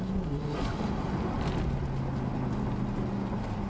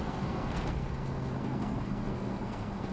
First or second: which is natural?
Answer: first